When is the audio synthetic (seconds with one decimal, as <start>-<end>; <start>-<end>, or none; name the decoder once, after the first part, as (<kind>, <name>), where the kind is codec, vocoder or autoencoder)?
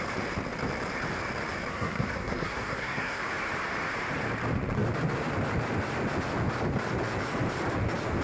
1.7-3.2 (codec, SNAC)